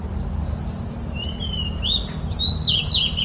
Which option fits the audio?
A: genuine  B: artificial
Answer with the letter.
A